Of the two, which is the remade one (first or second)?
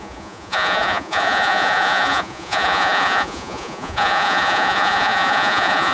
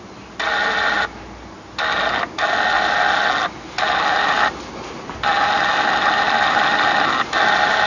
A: first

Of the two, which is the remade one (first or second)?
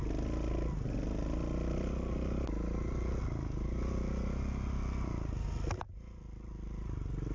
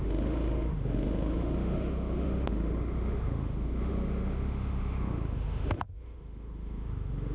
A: second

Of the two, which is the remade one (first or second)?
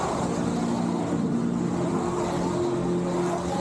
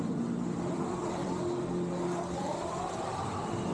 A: second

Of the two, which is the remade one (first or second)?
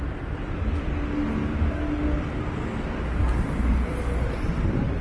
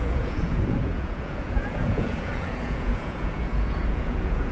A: second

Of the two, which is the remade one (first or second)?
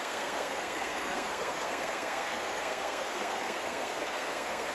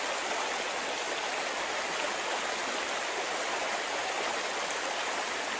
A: first